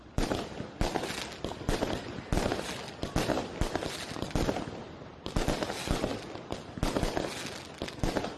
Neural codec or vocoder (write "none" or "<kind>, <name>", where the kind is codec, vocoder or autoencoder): none